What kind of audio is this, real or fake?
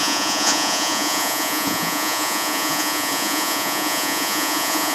fake